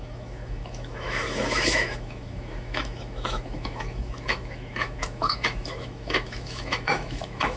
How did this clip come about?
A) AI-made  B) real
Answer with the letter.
A